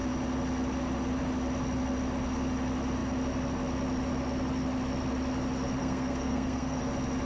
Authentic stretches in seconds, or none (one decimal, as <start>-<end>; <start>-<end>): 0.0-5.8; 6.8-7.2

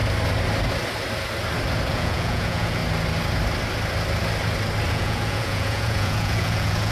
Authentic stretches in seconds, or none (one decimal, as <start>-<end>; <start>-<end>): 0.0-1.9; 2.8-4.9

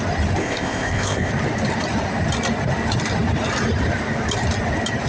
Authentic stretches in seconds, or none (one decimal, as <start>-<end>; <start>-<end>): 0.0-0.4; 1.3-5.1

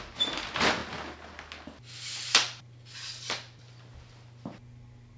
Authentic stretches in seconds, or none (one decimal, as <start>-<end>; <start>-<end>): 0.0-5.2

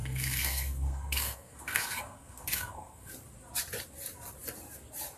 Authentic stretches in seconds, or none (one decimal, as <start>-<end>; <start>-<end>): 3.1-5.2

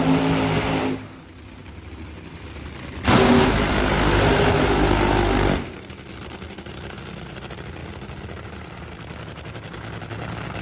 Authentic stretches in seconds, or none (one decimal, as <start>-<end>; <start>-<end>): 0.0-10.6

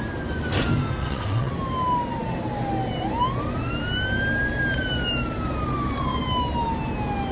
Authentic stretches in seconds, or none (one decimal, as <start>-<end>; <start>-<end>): 0.0-1.0; 1.5-7.3